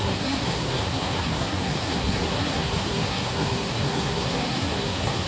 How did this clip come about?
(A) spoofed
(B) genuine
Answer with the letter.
A